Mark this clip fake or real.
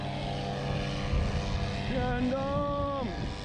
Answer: real